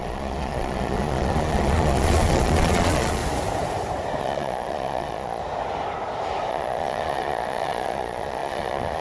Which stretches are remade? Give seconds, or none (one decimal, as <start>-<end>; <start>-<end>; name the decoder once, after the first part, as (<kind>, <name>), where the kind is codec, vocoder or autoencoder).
0.0-3.2 (vocoder, Vocos); 4.2-5.4; 6.5-9.0

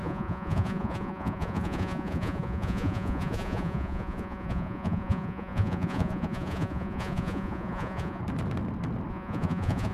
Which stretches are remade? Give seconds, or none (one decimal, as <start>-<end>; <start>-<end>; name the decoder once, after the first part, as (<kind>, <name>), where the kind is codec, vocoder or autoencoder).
0.0-8.2 (vocoder, Vocos); 9.1-9.9